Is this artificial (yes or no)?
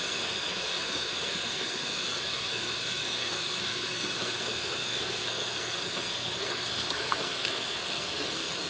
yes